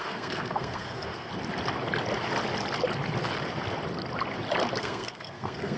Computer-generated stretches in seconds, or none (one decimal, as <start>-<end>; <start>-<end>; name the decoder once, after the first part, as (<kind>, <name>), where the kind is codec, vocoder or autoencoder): 0.0-1.3 (codec, SNAC); 4.8-5.8